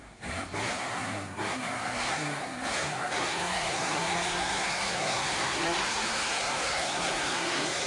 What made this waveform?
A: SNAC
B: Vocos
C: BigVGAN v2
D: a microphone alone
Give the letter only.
A